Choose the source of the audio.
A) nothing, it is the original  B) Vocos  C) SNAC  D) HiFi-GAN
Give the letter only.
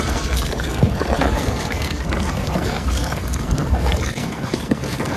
C